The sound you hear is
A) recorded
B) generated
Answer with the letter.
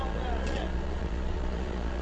B